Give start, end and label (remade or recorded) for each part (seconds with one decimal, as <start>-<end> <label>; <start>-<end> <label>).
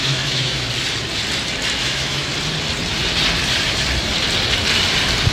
0.0-0.7 remade; 0.7-1.8 recorded; 1.8-2.3 remade; 2.3-5.3 recorded